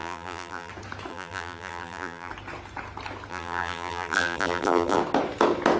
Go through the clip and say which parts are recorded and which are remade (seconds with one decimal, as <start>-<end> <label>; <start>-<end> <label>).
0.0-0.7 remade; 0.7-1.1 recorded; 1.1-2.3 remade; 2.3-3.3 recorded; 3.3-5.0 remade; 5.0-5.8 recorded

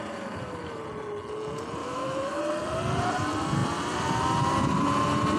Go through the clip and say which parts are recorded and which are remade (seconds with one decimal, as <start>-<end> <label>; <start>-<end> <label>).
0.0-1.8 recorded; 1.8-2.4 remade; 2.4-5.4 recorded

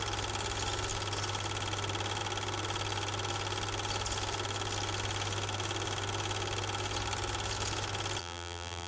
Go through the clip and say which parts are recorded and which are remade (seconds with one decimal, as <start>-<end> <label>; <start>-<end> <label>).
0.0-8.2 recorded; 8.2-8.9 remade

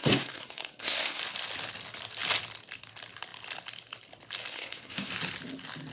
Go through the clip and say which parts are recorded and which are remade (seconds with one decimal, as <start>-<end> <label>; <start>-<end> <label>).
0.0-1.2 remade; 1.2-4.5 recorded; 4.5-5.1 remade; 5.1-5.9 recorded